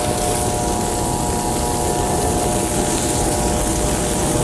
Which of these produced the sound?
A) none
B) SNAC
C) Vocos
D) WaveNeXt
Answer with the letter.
A